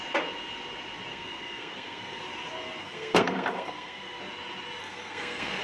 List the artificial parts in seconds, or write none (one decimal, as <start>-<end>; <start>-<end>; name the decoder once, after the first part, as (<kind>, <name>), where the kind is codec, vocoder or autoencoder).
1.1-2.2 (codec, SNAC); 2.8-4.2; 4.8-5.6